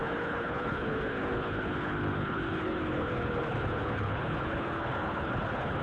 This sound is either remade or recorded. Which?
remade